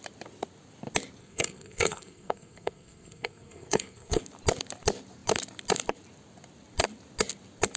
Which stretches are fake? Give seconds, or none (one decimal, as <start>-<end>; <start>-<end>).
1.2-4.2